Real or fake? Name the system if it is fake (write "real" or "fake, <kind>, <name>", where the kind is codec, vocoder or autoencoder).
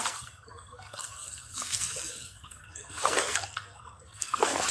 fake, codec, SNAC